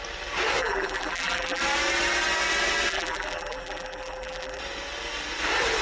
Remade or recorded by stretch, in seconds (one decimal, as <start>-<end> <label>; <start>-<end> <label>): 0.0-0.6 recorded; 0.6-1.6 remade; 1.6-2.9 recorded; 2.9-4.6 remade; 4.6-5.8 recorded